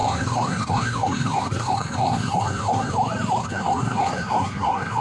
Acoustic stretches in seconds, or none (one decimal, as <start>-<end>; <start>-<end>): 2.9-3.4